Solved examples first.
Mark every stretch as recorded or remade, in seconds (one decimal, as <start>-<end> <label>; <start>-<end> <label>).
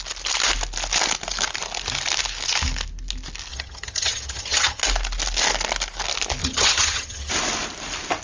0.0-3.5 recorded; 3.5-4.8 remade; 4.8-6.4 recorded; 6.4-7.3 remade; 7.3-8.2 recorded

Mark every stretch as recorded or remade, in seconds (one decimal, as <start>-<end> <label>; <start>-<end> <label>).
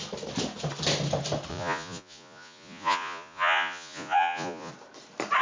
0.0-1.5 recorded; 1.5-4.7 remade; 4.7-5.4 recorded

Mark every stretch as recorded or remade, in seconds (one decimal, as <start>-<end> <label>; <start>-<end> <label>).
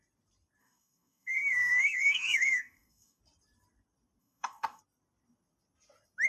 0.0-0.6 recorded; 0.6-3.2 remade; 3.2-4.2 recorded; 4.2-4.8 remade; 4.8-6.3 recorded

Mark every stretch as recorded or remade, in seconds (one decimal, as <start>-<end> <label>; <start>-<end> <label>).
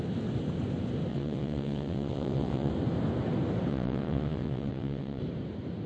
0.0-1.1 recorded; 1.1-2.7 remade; 2.7-3.7 recorded; 3.7-5.2 remade; 5.2-5.9 recorded